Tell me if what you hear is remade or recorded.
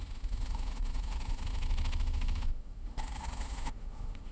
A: remade